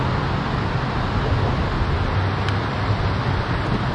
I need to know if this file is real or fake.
real